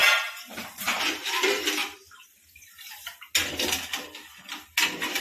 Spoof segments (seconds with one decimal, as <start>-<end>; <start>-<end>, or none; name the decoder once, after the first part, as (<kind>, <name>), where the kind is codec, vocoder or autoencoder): 1.2-3.3 (vocoder, BigVGAN v2)